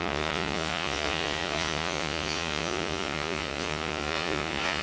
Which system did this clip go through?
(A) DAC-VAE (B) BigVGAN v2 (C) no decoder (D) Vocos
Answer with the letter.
D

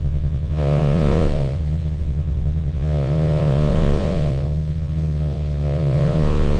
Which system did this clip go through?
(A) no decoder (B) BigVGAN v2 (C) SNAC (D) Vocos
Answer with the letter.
D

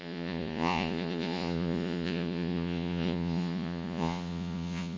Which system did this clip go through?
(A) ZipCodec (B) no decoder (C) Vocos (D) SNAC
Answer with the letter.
C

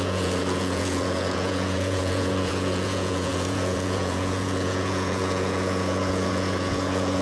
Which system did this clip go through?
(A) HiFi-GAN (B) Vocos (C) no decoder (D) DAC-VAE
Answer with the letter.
B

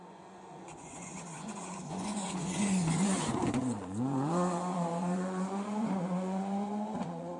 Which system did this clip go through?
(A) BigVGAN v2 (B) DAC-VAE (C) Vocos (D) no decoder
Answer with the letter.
C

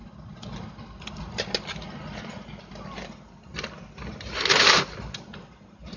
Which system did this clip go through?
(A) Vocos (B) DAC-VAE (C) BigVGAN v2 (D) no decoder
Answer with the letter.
D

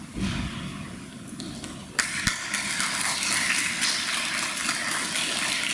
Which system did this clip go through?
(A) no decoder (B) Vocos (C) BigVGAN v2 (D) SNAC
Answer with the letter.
A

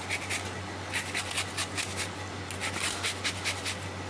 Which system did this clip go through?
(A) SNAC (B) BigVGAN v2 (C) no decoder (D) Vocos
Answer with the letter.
C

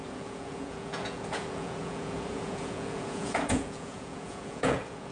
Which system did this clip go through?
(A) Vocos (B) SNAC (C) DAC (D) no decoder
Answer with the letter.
A